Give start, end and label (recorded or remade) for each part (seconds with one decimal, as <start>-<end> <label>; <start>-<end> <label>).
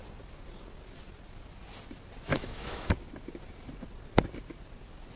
0.0-2.3 recorded; 2.3-2.9 remade; 2.9-5.2 recorded